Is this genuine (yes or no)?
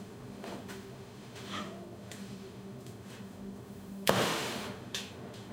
no